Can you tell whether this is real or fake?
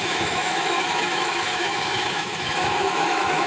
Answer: fake